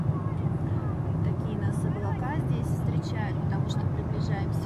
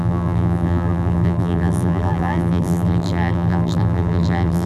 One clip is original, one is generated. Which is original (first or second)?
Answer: first